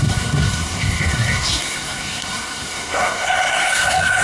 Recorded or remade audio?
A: remade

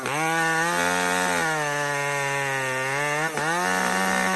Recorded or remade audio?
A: recorded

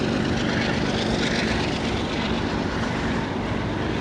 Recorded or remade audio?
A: recorded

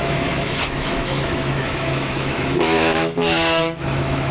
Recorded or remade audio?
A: remade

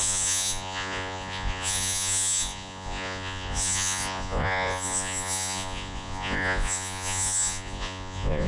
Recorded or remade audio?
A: remade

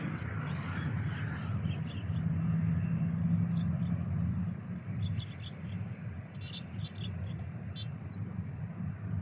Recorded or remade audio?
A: recorded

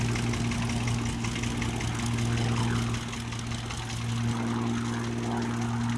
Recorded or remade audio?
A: recorded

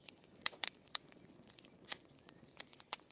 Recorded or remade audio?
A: remade